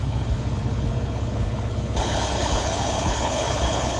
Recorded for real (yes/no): no